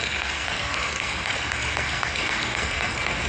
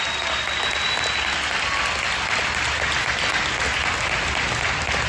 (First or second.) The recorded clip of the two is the second